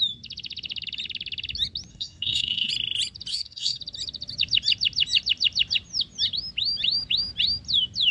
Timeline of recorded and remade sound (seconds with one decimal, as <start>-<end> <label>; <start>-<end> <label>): 0.0-1.9 recorded; 1.9-2.7 remade; 2.7-3.3 recorded; 3.3-3.8 remade; 3.8-8.1 recorded